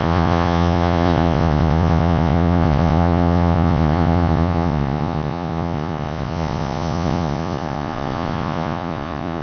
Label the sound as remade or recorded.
remade